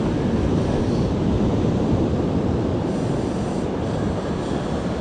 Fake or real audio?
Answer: real